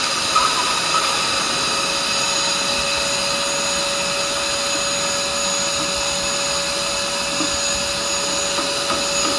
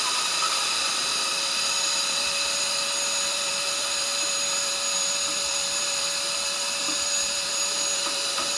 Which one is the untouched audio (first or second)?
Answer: first